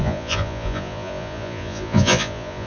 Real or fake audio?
fake